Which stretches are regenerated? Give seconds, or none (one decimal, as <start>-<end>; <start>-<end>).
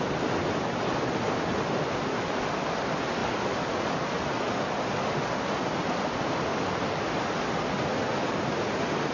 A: none